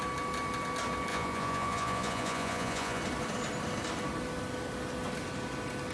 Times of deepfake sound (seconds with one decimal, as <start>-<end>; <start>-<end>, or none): 1.1-3.0